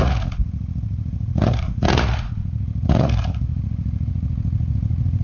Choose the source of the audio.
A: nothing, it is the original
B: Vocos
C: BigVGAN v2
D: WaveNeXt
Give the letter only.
B